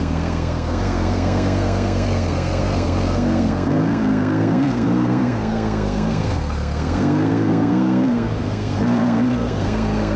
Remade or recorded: remade